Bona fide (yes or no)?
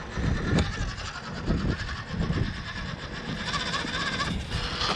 yes